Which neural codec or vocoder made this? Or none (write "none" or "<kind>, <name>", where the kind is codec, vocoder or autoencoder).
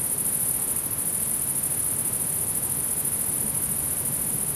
none